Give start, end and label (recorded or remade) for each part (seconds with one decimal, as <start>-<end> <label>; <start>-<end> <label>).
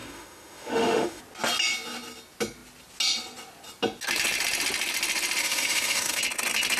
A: 0.0-1.2 remade; 1.2-5.4 recorded; 5.4-6.2 remade; 6.2-6.8 recorded